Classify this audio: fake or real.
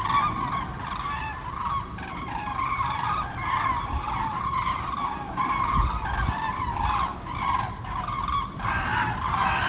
real